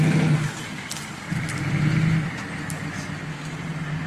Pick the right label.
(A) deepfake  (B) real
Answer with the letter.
B